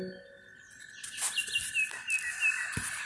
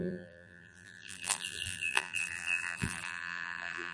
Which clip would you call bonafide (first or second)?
first